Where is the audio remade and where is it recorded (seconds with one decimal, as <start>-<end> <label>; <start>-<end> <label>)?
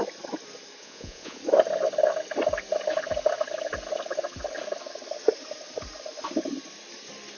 0.0-0.8 recorded; 0.8-1.4 remade; 1.4-7.4 recorded